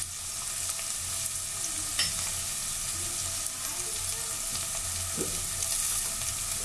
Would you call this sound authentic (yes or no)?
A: yes